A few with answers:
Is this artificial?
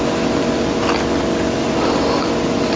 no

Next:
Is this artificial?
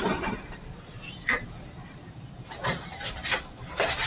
yes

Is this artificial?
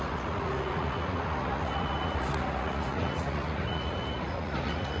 yes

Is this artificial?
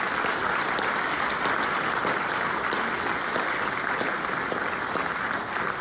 no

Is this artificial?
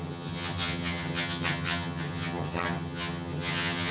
yes